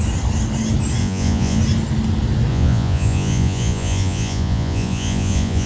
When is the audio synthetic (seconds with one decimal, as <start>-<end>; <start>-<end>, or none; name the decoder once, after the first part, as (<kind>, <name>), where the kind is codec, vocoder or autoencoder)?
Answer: 1.0-1.6 (vocoder, Vocos); 2.5-5.7